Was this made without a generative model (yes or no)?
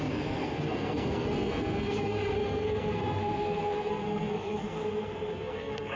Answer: no